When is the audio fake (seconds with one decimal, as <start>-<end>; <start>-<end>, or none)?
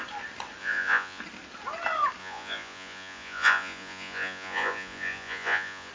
0.6-1.2; 2.2-5.9